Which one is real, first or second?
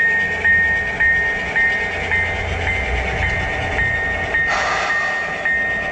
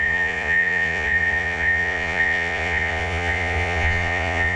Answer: first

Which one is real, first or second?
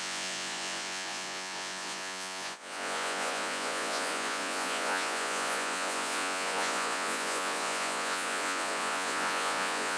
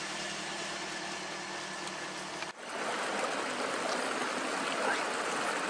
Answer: second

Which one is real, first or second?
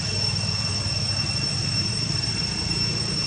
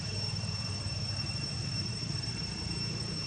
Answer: first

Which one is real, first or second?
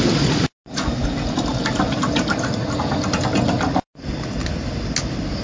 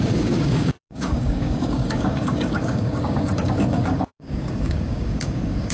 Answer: first